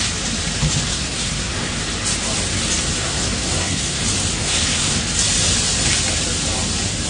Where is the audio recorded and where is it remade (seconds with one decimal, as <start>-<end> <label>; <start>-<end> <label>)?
0.0-0.9 recorded; 0.9-1.8 remade; 1.8-3.0 recorded; 3.0-4.0 remade; 4.0-4.4 recorded; 4.4-5.0 remade; 5.0-7.1 recorded

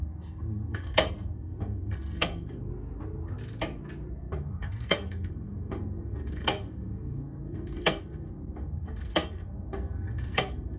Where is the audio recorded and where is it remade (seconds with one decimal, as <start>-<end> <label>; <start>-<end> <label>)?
0.0-2.7 remade; 2.7-4.1 recorded; 4.1-10.8 remade